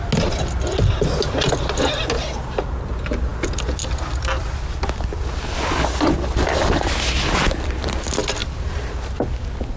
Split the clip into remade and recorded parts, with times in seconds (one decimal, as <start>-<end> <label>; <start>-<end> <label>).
0.0-8.4 recorded; 8.4-9.0 remade; 9.0-9.8 recorded